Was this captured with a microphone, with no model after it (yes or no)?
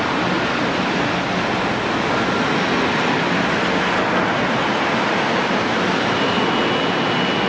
yes